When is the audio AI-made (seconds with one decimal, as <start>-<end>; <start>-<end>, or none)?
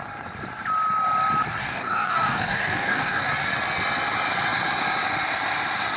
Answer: 1.6-3.3